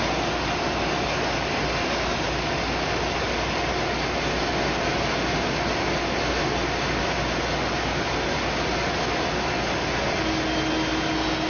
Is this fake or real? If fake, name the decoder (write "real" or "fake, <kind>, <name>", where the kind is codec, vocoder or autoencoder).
real